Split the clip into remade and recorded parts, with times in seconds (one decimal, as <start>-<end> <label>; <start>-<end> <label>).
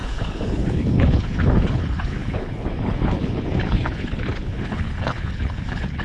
0.0-6.0 remade